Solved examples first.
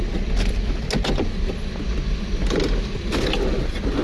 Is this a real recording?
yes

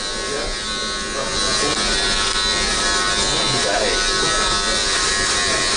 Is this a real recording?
yes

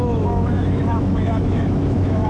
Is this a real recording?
no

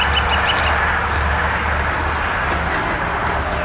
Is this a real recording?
yes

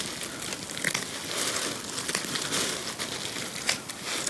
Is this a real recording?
yes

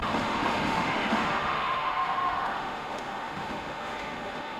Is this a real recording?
no